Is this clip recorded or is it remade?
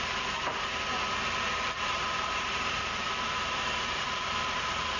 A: remade